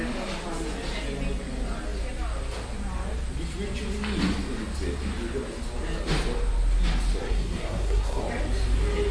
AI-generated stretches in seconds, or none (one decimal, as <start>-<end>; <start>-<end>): 7.2-8.2